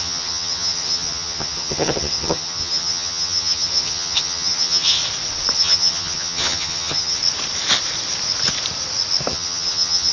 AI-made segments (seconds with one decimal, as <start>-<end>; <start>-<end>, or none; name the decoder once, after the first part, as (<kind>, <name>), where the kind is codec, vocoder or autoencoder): 0.0-5.0 (vocoder, HiFi-GAN); 5.5-7.2; 9.3-10.1

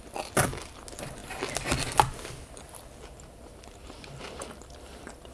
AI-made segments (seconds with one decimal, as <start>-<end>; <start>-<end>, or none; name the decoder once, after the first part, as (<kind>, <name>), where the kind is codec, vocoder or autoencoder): none

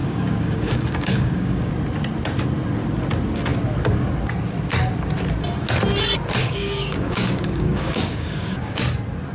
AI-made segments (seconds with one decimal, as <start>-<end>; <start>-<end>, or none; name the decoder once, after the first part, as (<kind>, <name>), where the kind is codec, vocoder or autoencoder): 0.0-1.7 (codec, DAC); 6.4-8.8

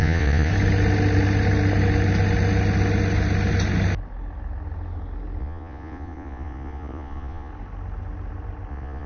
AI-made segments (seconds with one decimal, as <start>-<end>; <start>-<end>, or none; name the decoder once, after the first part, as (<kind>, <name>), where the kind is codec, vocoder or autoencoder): 0.0-0.5 (vocoder, Vocos); 5.4-7.5; 8.7-9.1

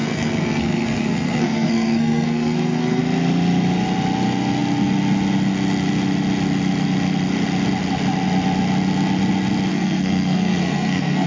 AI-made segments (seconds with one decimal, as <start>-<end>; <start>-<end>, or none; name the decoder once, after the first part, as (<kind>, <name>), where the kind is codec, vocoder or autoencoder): 0.0-3.0 (codec, SNAC); 9.7-11.3